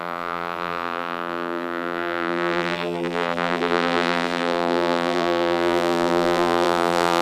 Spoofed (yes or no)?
yes